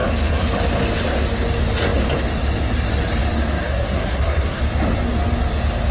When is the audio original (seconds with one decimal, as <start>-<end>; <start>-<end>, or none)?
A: 0.0-3.6; 4.6-5.9